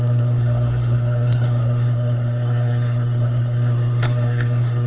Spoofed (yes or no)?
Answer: yes